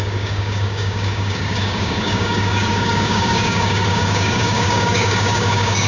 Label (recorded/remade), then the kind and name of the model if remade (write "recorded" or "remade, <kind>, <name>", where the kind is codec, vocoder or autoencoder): remade, codec, DAC